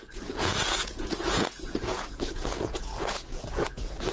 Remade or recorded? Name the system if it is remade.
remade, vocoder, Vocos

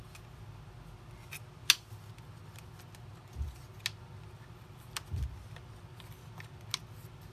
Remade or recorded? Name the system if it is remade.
recorded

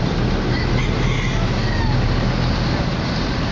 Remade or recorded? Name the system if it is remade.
recorded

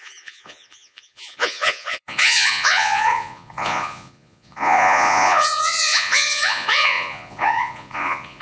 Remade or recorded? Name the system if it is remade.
remade, vocoder, Vocos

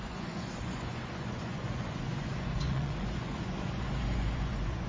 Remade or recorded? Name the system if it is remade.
remade, vocoder, Vocos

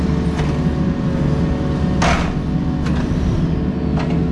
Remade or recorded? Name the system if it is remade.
recorded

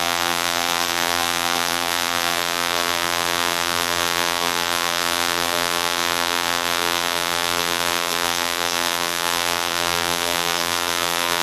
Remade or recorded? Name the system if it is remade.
remade, vocoder, BigVGAN v2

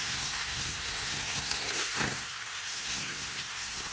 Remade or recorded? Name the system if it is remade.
remade, codec, SNAC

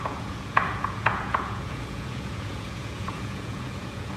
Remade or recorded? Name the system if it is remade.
remade, vocoder, Vocos